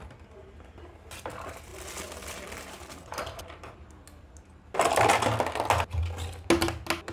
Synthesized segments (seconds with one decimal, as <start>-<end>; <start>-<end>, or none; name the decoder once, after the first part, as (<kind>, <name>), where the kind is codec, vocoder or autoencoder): none